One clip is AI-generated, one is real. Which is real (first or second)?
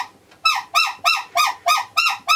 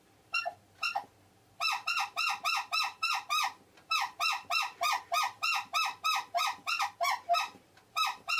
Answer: first